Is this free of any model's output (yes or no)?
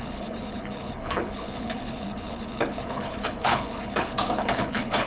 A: no